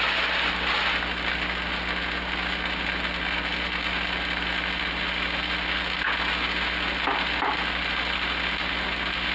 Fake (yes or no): no